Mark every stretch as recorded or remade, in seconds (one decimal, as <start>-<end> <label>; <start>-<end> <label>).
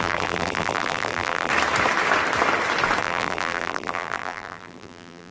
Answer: 0.0-1.5 remade; 1.5-3.0 recorded; 3.0-5.3 remade